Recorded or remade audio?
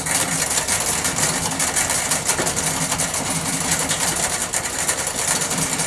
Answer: recorded